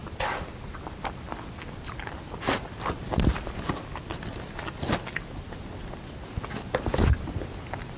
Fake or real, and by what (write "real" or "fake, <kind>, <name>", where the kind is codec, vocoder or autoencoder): real